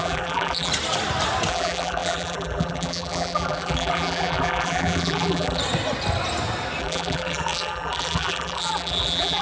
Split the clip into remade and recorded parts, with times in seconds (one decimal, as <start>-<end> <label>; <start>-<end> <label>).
0.0-0.7 remade; 0.7-1.5 recorded; 1.5-5.6 remade; 5.6-6.8 recorded; 6.8-9.4 remade